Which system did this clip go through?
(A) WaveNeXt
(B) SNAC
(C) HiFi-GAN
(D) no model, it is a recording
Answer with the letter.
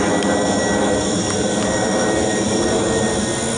D